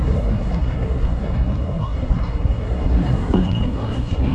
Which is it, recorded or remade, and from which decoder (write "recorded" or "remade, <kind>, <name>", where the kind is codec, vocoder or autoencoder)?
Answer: remade, codec, SNAC